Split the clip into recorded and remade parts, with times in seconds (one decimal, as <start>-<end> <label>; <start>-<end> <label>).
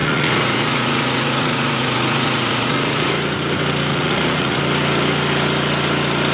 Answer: 0.0-3.1 remade; 3.1-3.9 recorded; 3.9-4.6 remade; 4.6-6.3 recorded